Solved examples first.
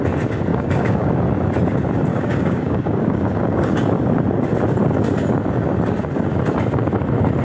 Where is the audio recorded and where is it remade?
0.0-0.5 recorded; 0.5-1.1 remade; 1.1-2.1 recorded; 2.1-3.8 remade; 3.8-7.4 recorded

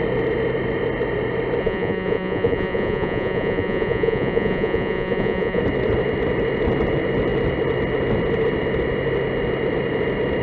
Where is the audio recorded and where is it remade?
0.0-1.6 recorded; 1.6-5.6 remade; 5.6-10.4 recorded

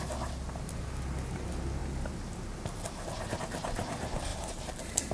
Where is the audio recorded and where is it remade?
0.0-4.3 recorded; 4.3-5.1 remade

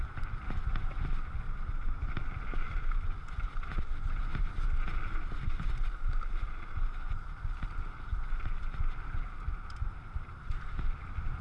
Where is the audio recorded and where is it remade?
0.0-11.4 recorded

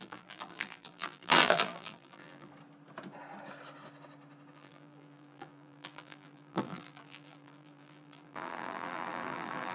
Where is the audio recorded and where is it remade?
0.0-2.5 remade; 2.5-4.5 recorded; 4.5-9.7 remade